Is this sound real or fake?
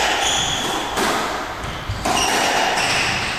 real